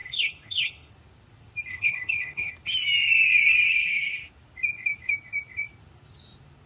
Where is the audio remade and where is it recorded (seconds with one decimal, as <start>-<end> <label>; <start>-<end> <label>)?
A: 0.0-0.9 remade; 0.9-1.7 recorded; 1.7-2.5 remade; 2.5-3.7 recorded; 3.7-4.2 remade; 4.2-6.7 recorded